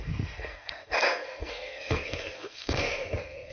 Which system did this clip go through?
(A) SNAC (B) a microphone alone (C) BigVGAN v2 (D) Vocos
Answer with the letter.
A